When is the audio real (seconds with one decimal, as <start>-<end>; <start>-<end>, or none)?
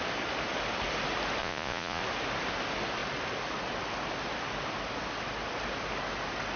0.0-1.4; 2.0-6.6